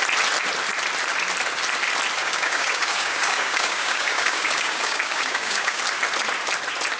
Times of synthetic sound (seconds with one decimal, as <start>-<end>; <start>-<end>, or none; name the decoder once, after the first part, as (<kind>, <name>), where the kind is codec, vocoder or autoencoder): 2.2-5.8 (codec, DAC)